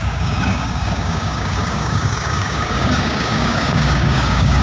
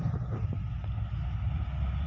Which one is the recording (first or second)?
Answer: second